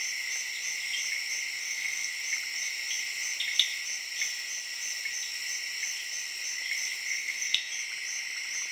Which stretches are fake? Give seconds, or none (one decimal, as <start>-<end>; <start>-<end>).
1.6-2.1; 7.1-7.7